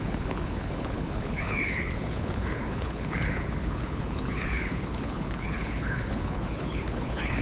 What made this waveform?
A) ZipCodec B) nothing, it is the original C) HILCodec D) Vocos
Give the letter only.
C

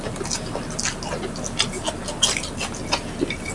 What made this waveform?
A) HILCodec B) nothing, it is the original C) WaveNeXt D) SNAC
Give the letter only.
B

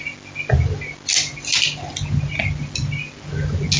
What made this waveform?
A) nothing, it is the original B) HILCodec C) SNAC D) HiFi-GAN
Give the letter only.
A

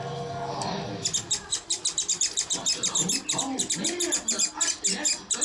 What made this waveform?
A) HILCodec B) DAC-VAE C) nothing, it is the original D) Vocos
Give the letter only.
C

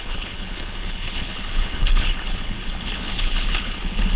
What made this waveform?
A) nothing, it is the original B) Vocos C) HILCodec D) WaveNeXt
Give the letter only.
C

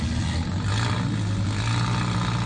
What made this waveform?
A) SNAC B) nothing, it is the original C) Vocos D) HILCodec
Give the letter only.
B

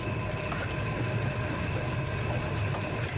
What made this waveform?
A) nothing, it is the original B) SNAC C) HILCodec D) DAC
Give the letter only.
A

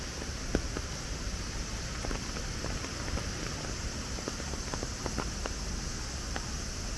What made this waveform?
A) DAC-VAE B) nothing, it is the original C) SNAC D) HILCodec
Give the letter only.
B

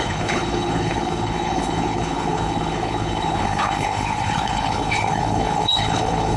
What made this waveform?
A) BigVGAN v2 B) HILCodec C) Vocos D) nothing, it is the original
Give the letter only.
B